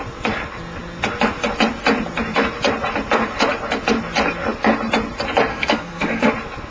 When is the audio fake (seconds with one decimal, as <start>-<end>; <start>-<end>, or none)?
5.5-6.3